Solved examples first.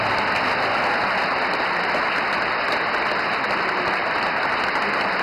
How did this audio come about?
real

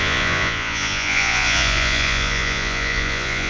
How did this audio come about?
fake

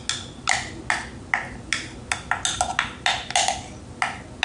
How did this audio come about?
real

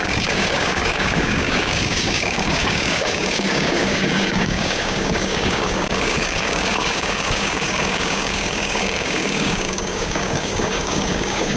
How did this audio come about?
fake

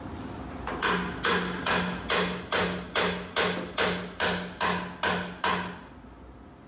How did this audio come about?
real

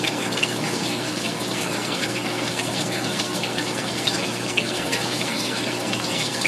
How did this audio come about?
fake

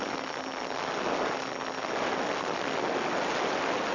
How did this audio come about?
real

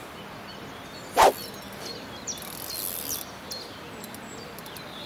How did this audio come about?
real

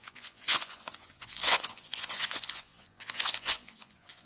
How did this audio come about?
fake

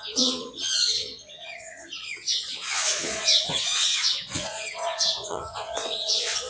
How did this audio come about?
fake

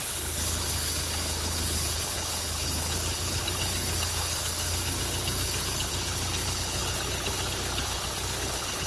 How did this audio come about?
fake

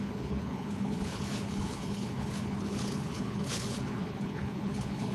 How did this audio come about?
fake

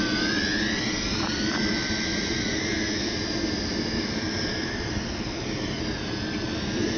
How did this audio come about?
fake